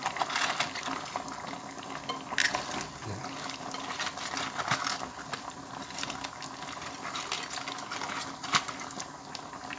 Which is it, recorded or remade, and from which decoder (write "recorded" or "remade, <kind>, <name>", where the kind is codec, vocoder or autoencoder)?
recorded